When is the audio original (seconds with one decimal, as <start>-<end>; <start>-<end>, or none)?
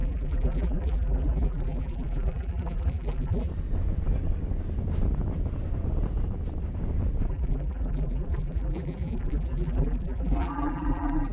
3.5-7.3